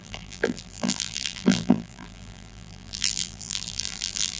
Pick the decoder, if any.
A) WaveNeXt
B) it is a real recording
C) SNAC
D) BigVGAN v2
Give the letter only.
D